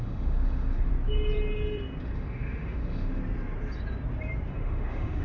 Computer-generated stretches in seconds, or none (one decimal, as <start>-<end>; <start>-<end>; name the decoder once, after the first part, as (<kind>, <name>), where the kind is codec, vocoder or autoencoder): 0.0-0.9 (autoencoder, DAC-VAE); 2.0-3.2; 4.5-5.2